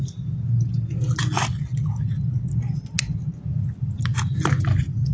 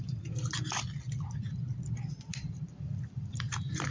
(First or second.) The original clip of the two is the first